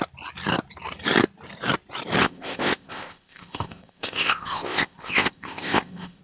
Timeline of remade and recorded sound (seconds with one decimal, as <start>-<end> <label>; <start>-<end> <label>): 0.0-2.2 recorded; 2.2-6.2 remade